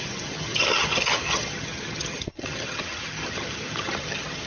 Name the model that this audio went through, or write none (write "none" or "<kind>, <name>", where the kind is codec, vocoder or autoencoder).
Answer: vocoder, HiFi-GAN